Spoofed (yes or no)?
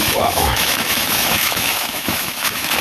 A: yes